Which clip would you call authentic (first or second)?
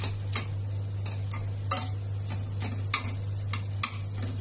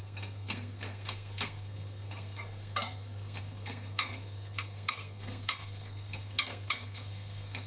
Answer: first